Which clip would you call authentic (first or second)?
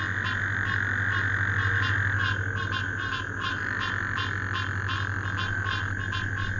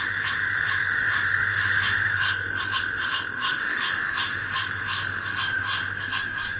first